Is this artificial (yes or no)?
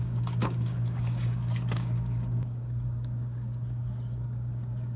yes